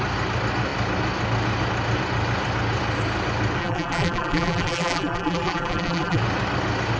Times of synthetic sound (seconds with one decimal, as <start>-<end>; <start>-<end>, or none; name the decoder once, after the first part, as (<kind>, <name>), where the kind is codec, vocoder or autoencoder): 3.6-6.2 (vocoder, BigVGAN v2)